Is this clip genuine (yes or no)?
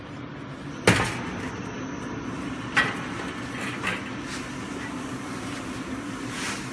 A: yes